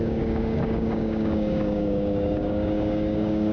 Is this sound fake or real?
fake